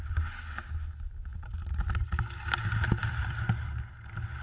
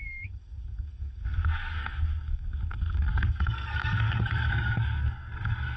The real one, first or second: first